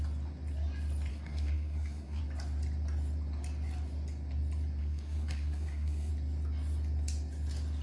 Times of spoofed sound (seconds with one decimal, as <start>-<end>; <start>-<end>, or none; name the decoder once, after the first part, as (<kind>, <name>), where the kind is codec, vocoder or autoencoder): 1.1-2.2 (codec, SNAC); 4.8-6.1